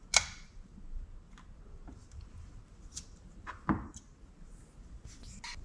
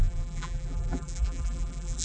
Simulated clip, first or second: second